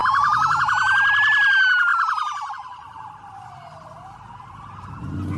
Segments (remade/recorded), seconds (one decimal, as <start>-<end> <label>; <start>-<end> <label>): 0.0-5.4 recorded